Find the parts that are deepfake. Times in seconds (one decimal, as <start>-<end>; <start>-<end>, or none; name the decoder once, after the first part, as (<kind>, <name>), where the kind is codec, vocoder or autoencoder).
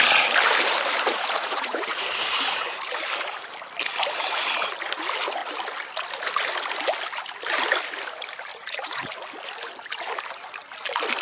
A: 1.1-2.1 (vocoder, Vocos); 8.5-9.1